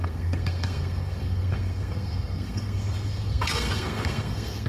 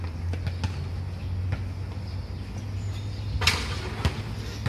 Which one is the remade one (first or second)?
first